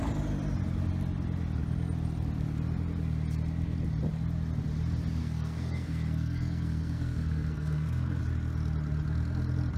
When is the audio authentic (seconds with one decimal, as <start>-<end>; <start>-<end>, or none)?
0.0-5.2; 8.2-9.8